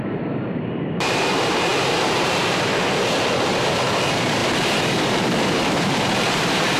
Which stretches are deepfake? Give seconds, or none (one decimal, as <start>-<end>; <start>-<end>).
0.0-6.8

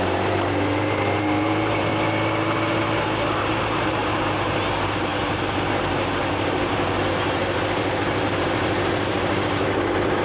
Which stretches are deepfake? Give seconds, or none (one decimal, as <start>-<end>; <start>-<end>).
0.0-1.9; 2.7-4.0; 4.5-10.2

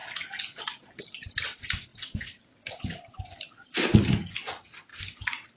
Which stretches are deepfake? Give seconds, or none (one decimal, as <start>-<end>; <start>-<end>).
none

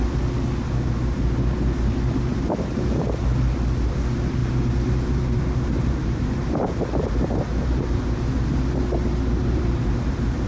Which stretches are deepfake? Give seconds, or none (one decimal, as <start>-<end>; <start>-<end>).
2.3-3.2; 4.4-8.3; 9.4-10.5